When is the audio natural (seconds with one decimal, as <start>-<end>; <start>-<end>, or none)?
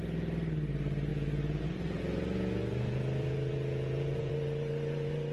0.0-1.1; 4.3-5.3